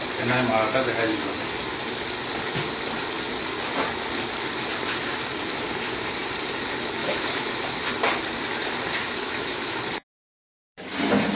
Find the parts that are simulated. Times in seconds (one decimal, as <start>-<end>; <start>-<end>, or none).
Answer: 7.0-7.9; 9.0-9.9